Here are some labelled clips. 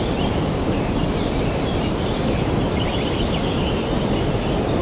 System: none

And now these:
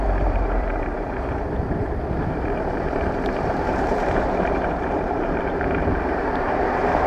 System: vocoder, BigVGAN v2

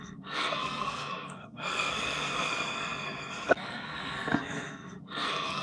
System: codec, SNAC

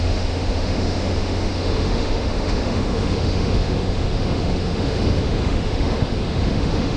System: autoencoder, DAC-VAE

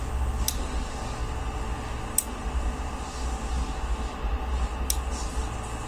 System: none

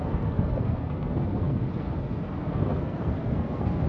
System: codec, SNAC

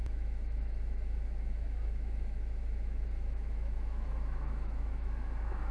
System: autoencoder, DAC-VAE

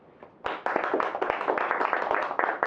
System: none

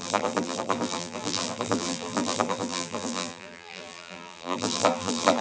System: vocoder, BigVGAN v2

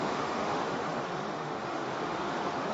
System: autoencoder, DAC-VAE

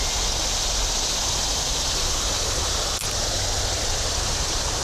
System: none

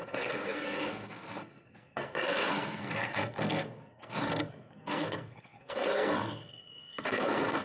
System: codec, SNAC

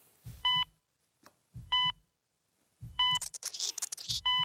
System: vocoder, BigVGAN v2